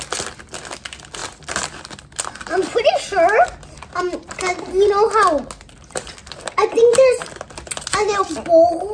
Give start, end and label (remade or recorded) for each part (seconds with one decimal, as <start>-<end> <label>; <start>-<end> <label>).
0.0-1.2 recorded; 1.2-1.9 remade; 1.9-6.2 recorded; 6.2-6.8 remade; 6.8-8.9 recorded